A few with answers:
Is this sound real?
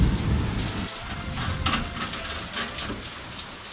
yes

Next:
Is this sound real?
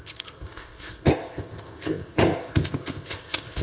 no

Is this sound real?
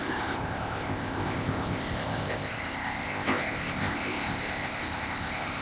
no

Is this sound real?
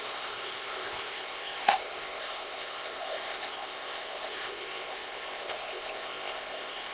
no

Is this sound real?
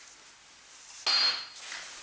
yes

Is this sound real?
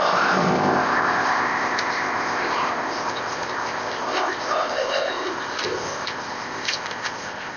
no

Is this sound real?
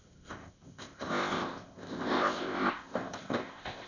no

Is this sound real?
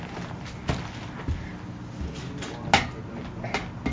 yes